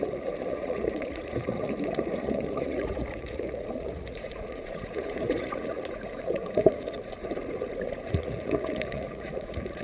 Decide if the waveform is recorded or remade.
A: remade